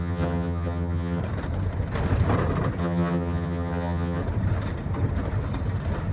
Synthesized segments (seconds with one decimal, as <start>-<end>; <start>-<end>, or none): 0.0-1.2; 2.8-4.2